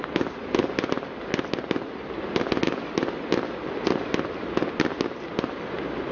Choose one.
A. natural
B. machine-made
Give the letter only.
A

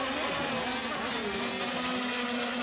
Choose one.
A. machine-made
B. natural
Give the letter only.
B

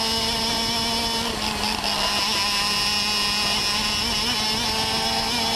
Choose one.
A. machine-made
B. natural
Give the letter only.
B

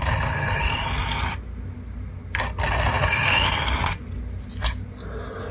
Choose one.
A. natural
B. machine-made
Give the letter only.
A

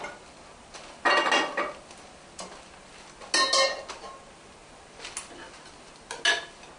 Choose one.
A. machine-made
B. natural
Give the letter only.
B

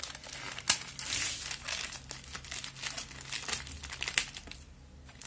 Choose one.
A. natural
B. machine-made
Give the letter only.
A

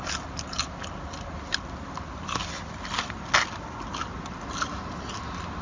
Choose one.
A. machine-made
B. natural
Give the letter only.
B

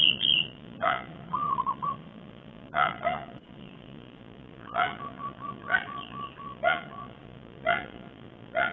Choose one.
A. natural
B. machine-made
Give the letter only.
B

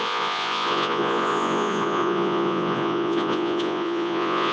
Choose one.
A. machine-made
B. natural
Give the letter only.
A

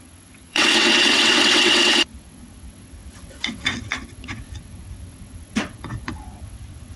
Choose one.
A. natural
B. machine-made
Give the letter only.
B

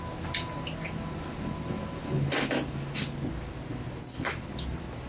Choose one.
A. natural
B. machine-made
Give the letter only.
A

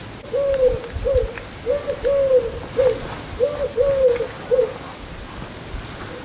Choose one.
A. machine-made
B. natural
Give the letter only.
B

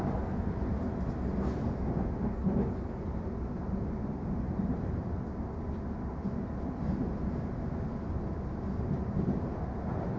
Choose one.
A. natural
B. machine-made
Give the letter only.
A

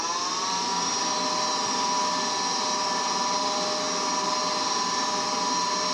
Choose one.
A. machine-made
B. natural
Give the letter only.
B